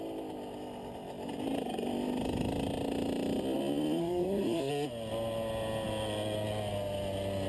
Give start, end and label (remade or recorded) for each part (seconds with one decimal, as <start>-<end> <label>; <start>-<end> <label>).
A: 0.0-4.0 recorded; 4.0-4.7 remade; 4.7-7.5 recorded